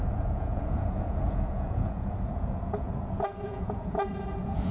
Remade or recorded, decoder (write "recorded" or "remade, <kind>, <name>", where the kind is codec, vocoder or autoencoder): remade, vocoder, Vocos